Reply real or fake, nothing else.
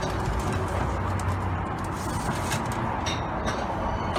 real